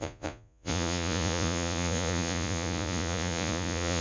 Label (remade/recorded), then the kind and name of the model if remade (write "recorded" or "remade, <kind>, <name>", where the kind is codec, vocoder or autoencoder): remade, vocoder, Vocos